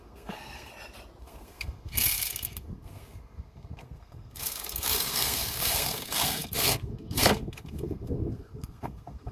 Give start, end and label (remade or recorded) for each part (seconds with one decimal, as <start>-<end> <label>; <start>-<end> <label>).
0.0-0.7 remade; 0.7-1.2 recorded; 1.2-9.3 remade